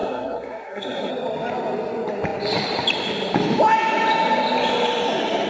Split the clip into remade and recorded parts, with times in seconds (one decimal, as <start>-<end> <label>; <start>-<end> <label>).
0.0-1.1 remade; 1.1-5.5 recorded